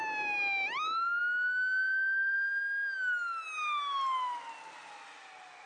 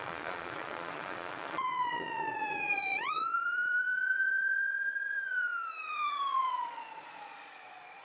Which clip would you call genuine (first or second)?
first